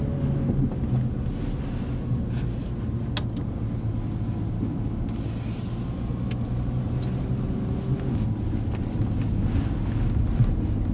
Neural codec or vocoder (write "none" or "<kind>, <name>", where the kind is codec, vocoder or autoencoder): none